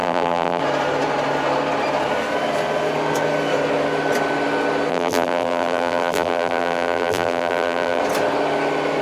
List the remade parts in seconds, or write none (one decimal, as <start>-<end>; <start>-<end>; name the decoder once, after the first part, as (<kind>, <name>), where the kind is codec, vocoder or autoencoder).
0.0-0.6 (vocoder, BigVGAN v2); 4.9-8.0